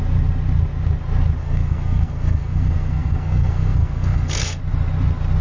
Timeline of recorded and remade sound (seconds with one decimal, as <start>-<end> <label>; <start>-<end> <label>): 0.0-1.4 recorded; 1.4-4.6 remade; 4.6-5.4 recorded